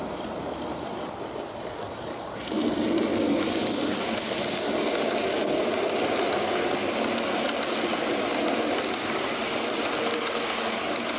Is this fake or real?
real